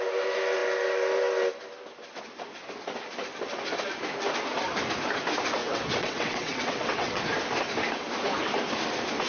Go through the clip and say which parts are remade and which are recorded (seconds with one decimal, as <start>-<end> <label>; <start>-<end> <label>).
0.0-5.6 recorded; 5.6-7.2 remade; 7.2-9.3 recorded